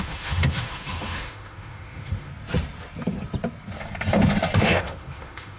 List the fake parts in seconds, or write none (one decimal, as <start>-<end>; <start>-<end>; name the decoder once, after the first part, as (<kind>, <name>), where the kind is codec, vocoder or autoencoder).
0.0-2.3 (autoencoder, DAC-VAE); 4.6-5.6